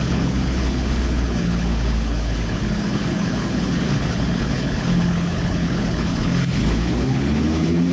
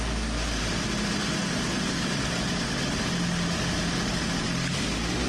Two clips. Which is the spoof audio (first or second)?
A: first